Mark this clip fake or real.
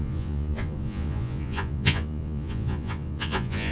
fake